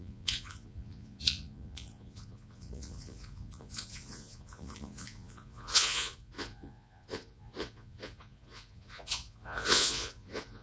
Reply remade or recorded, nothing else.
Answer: remade